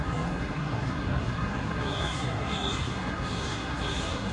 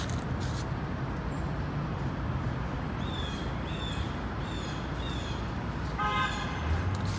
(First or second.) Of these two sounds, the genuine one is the second